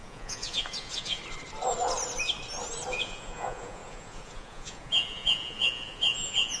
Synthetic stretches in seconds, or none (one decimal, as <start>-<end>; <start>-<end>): 0.0-1.2; 2.9-6.6